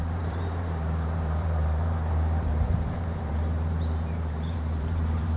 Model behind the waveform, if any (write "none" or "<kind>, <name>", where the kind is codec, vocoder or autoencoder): vocoder, BigVGAN v2